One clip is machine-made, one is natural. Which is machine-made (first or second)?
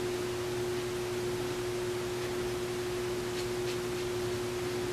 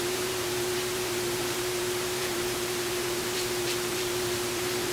second